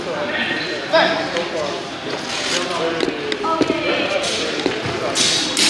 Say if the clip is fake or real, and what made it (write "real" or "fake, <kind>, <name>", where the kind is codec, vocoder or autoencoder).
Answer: real